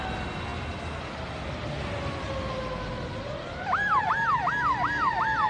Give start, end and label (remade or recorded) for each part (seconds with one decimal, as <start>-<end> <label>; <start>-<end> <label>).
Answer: 0.0-5.5 recorded

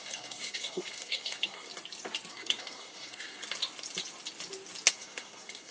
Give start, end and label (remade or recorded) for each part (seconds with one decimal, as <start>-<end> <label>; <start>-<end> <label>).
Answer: 0.0-1.7 remade; 1.7-2.3 recorded; 2.3-3.4 remade; 3.4-4.9 recorded; 4.9-5.7 remade

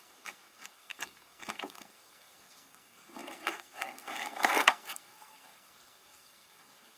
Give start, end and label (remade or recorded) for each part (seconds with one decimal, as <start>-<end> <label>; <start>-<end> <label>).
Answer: 0.0-7.0 remade

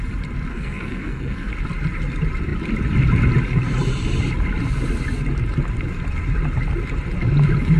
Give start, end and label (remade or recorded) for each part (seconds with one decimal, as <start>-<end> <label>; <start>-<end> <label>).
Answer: 0.0-0.5 recorded; 0.5-1.5 remade; 1.5-7.8 recorded

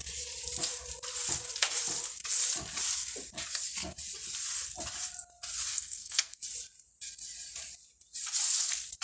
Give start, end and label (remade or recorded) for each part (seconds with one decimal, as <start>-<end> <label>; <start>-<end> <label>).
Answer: 0.0-5.7 recorded; 5.7-6.4 remade; 6.4-9.0 recorded